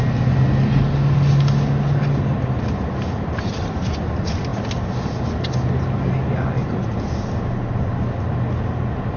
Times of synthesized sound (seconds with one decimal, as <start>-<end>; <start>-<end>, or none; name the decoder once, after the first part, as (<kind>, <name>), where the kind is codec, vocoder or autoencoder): none